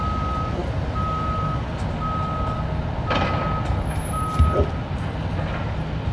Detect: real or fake real